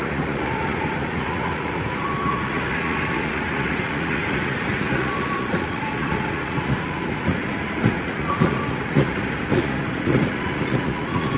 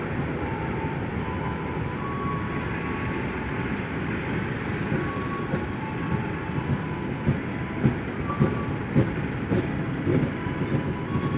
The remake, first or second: first